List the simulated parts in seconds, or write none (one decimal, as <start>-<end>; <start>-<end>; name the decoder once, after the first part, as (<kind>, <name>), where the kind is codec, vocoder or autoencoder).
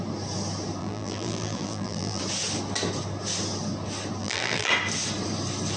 0.8-2.2 (vocoder, BigVGAN v2); 4.2-4.7